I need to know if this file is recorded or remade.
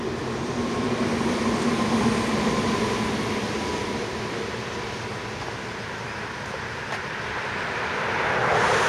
recorded